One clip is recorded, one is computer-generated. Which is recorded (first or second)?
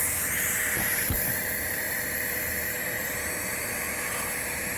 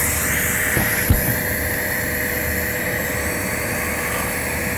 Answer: second